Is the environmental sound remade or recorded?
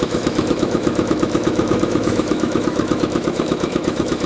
remade